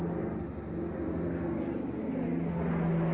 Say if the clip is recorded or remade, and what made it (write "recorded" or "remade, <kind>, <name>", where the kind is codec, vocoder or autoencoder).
recorded